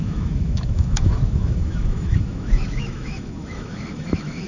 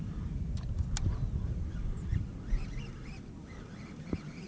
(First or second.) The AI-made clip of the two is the first